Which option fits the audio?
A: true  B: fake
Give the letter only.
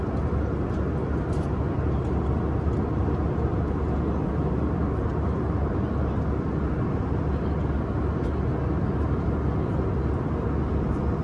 A